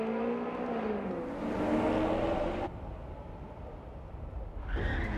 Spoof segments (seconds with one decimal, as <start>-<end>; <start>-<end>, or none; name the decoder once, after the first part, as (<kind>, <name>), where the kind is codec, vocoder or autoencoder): 3.0-4.1 (vocoder, BigVGAN v2)